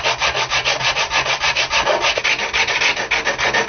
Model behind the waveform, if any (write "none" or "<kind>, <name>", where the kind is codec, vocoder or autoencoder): none